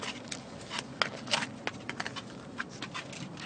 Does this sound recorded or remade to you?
recorded